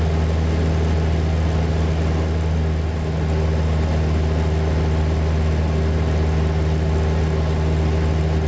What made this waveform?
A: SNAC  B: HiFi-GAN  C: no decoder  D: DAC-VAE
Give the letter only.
C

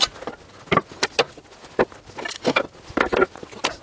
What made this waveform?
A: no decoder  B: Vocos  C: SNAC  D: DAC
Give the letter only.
A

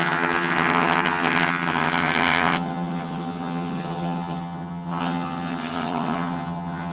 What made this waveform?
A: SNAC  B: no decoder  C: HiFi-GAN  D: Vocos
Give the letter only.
C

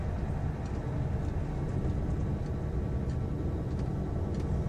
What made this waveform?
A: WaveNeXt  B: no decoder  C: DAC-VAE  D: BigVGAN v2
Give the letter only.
B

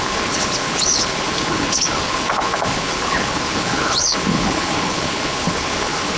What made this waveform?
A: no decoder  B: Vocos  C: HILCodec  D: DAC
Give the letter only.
C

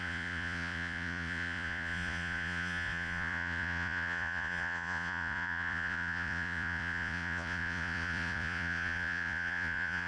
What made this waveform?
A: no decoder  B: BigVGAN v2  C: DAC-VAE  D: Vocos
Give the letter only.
D